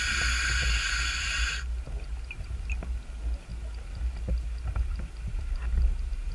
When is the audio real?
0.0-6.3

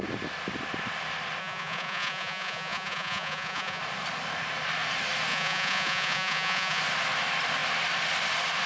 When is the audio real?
0.0-1.4; 3.8-5.3; 6.8-8.7

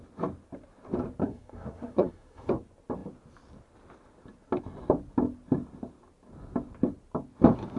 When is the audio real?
0.0-1.2; 2.5-7.8

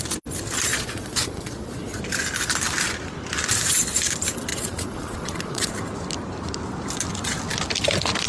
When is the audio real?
0.0-0.7; 2.0-4.5; 5.7-8.3